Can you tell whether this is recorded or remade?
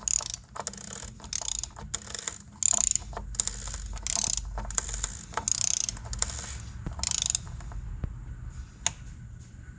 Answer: recorded